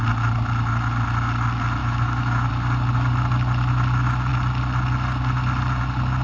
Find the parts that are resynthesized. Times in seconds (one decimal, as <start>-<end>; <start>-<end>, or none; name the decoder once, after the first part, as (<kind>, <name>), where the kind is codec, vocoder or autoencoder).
1.8-2.5 (autoencoder, DAC-VAE)